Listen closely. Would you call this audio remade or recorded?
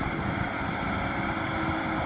recorded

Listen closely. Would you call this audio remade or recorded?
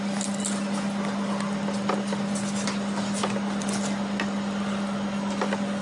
recorded